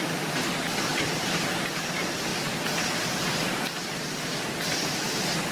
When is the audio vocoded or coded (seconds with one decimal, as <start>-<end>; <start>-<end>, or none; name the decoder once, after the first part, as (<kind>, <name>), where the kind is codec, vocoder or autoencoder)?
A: 0.9-1.7 (vocoder, BigVGAN v2); 2.3-4.6